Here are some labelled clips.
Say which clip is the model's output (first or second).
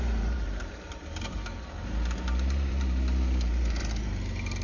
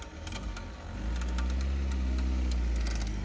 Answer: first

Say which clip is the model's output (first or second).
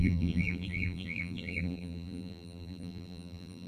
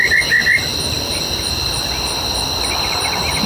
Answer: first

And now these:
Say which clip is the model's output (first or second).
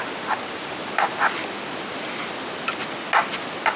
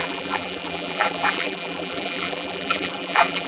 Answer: second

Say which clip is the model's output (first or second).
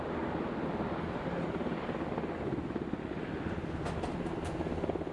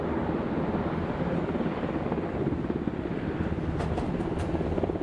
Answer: second